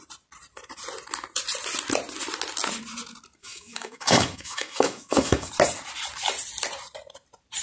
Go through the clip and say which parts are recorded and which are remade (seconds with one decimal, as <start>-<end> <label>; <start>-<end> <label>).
0.0-3.4 recorded; 3.4-5.5 remade; 5.5-7.6 recorded